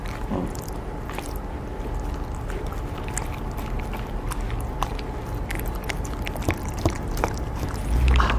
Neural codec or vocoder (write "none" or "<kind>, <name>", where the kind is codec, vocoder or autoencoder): none